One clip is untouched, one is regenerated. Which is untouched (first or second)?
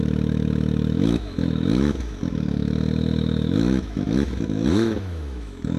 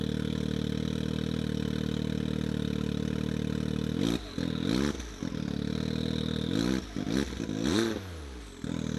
second